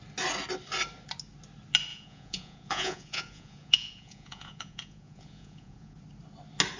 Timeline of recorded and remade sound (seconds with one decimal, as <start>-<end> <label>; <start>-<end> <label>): 0.0-1.9 recorded; 1.9-6.0 remade; 6.0-6.8 recorded